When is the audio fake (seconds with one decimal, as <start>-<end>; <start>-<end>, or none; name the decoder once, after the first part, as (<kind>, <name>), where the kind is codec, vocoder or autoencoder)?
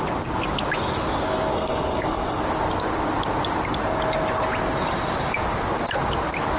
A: 1.5-2.4 (codec, SNAC)